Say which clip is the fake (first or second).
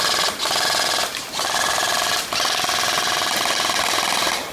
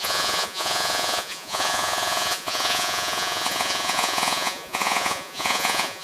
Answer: second